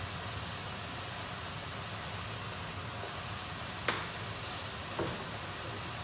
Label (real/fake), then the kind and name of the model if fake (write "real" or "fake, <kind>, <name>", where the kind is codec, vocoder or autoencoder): real